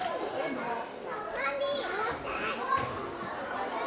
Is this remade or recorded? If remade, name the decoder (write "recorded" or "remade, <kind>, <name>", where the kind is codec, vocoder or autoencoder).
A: recorded